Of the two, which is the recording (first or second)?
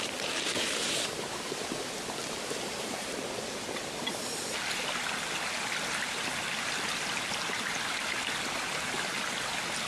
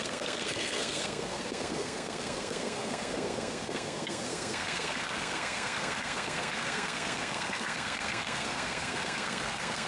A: first